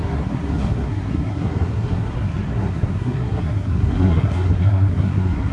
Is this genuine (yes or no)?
no